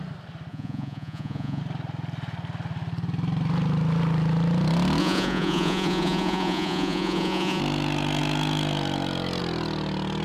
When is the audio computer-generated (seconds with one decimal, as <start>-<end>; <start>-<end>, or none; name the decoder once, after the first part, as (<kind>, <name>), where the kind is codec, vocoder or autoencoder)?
0.5-1.6 (vocoder, Vocos); 5.0-7.6